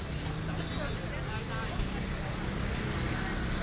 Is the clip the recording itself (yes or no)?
yes